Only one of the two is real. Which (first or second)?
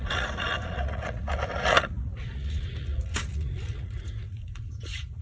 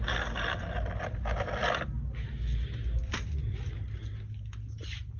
second